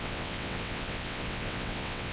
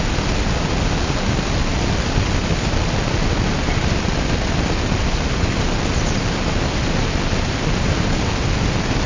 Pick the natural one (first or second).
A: second